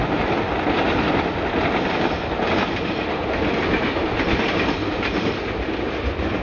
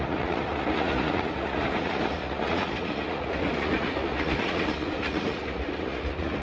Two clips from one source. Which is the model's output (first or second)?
second